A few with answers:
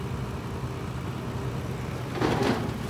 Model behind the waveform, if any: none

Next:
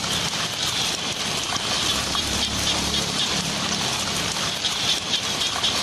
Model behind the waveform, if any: vocoder, BigVGAN v2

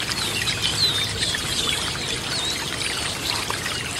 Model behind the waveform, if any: none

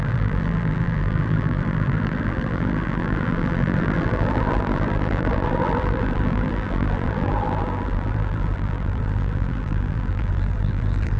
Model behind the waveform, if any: vocoder, BigVGAN v2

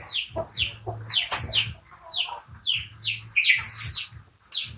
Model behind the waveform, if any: none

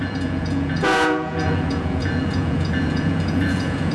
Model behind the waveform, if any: vocoder, Vocos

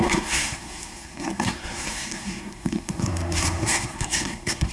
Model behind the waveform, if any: codec, SNAC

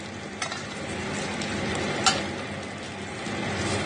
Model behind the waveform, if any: none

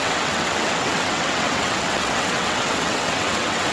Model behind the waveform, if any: vocoder, WaveNeXt